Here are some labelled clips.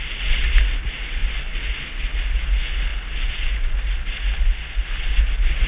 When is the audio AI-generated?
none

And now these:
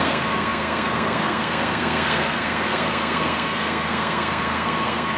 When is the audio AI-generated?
0.0-5.2 (codec, SNAC)

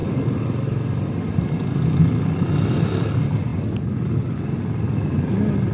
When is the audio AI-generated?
none